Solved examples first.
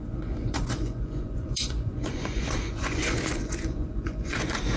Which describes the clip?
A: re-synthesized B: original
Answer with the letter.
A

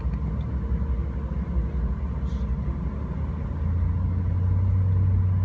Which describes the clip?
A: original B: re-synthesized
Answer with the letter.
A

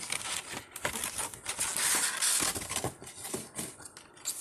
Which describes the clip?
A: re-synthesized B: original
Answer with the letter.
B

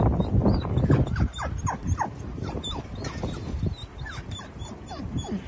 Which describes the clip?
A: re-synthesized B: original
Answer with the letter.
B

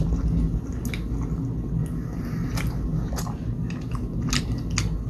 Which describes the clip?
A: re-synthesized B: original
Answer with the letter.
B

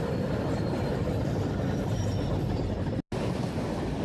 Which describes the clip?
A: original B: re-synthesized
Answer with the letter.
A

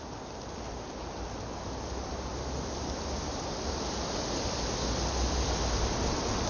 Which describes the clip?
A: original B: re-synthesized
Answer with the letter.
A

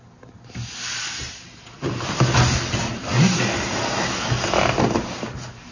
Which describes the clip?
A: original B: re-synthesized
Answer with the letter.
A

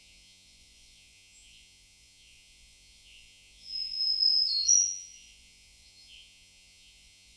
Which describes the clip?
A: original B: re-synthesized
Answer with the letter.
B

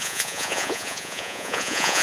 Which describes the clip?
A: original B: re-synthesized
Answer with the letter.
B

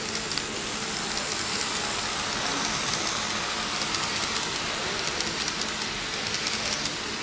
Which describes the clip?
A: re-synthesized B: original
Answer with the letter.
B